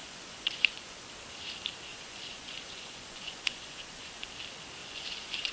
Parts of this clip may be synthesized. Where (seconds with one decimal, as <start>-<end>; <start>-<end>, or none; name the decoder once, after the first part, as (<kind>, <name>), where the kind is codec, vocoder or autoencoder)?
0.0-1.1 (vocoder, Vocos); 1.9-4.3; 4.8-5.5